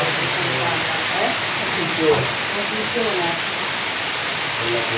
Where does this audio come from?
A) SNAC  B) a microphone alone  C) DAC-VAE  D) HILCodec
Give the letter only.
B